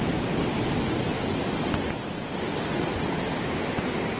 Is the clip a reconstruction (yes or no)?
no